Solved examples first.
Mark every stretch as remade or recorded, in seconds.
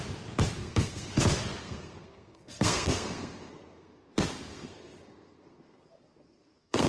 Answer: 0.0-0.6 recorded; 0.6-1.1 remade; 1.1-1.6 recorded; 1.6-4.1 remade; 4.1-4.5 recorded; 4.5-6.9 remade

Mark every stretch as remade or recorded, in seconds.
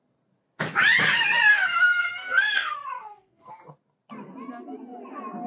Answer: 0.0-1.5 recorded; 1.5-3.5 remade; 3.5-5.5 recorded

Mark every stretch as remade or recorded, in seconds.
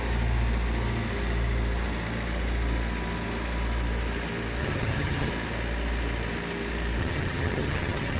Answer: 0.0-4.6 recorded; 4.6-5.3 remade; 5.3-7.0 recorded; 7.0-8.2 remade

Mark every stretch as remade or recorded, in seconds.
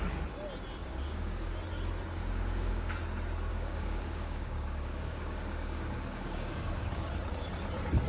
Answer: 0.0-0.8 recorded; 0.8-1.5 remade; 1.5-2.2 recorded; 2.2-2.9 remade; 2.9-3.5 recorded; 3.5-7.1 remade; 7.1-8.1 recorded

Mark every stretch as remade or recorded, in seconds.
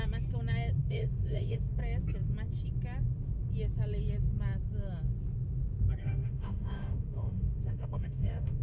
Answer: 0.0-0.8 recorded; 0.8-1.8 remade; 1.8-6.0 recorded; 6.0-8.6 remade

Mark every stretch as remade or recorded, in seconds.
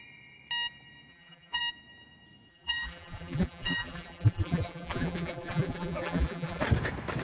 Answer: 0.0-1.1 recorded; 1.1-1.6 remade; 1.6-2.5 recorded; 2.5-6.6 remade; 6.6-7.2 recorded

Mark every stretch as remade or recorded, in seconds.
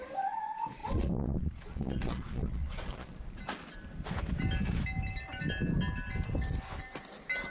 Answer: 0.0-0.8 recorded; 0.8-3.4 remade; 3.4-7.5 recorded